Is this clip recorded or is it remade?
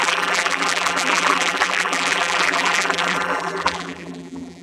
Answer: remade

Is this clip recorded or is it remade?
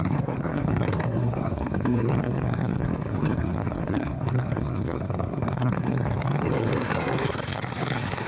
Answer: remade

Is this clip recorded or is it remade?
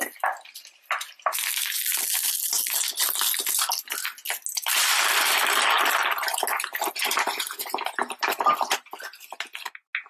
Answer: recorded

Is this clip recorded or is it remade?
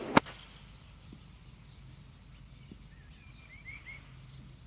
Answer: recorded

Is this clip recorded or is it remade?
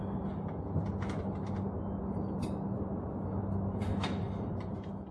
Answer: recorded